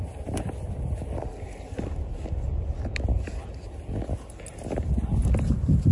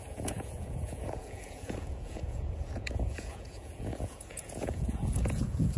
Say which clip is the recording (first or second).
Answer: first